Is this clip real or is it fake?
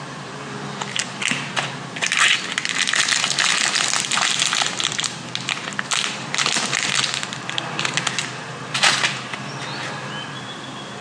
real